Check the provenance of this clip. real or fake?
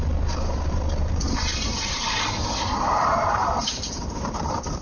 fake